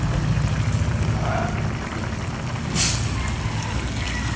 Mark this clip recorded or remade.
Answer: recorded